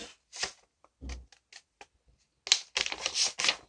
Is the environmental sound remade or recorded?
recorded